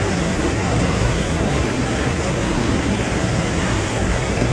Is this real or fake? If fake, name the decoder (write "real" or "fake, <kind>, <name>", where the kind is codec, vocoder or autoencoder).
fake, codec, SNAC